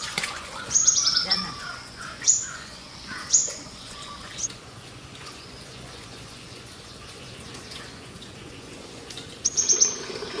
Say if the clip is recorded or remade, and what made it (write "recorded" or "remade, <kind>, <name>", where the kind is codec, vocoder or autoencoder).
remade, vocoder, Vocos